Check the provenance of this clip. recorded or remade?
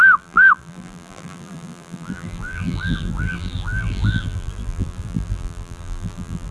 remade